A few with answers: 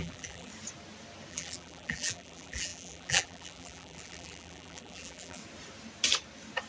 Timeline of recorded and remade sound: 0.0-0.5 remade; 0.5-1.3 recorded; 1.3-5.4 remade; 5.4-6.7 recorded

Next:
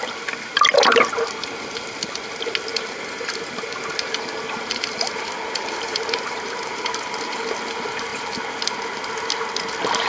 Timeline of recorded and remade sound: 0.0-2.7 recorded; 2.7-7.1 remade; 7.1-10.1 recorded

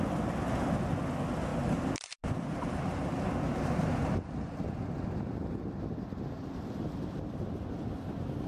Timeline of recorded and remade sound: 0.0-1.5 recorded; 1.5-4.5 remade; 4.5-8.5 recorded

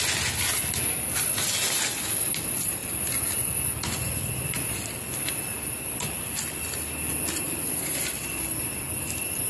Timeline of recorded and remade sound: 0.0-9.5 recorded

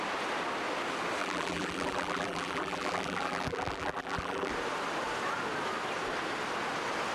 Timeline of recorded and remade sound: 0.0-1.2 recorded; 1.2-4.5 remade; 4.5-7.1 recorded